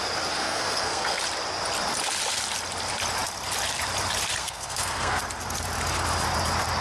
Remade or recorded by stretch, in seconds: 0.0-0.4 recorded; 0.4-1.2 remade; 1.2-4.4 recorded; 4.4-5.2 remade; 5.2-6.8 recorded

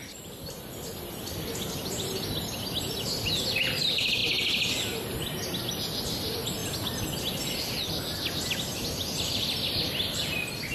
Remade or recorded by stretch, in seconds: 0.0-10.7 recorded

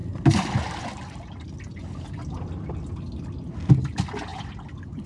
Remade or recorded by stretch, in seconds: 0.0-5.1 recorded

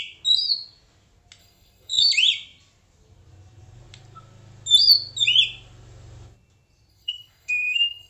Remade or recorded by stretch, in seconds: 0.0-1.4 recorded; 1.4-2.1 remade; 2.1-6.9 recorded; 6.9-8.1 remade

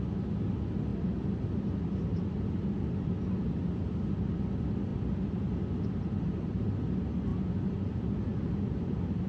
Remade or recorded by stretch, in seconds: 0.0-9.3 recorded

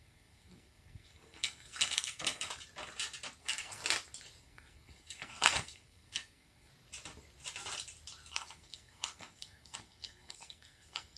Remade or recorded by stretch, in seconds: 0.0-2.5 remade; 2.5-3.4 recorded; 3.4-3.8 remade; 3.8-4.4 recorded; 4.4-6.7 remade; 6.7-8.3 recorded; 8.3-11.2 remade